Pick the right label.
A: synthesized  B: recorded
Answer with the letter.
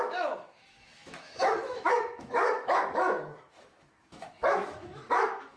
A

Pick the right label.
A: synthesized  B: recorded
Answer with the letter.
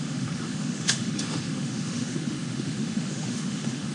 A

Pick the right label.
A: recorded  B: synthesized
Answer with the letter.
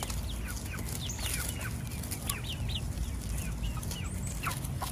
A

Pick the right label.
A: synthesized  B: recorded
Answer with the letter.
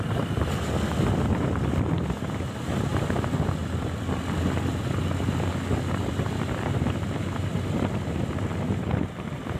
B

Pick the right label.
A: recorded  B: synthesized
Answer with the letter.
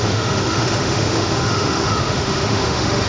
B